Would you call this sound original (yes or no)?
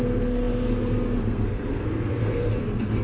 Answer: no